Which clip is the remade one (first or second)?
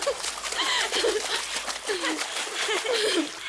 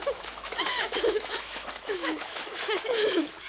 second